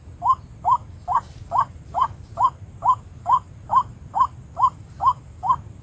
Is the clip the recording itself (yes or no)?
yes